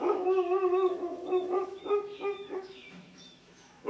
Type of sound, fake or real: fake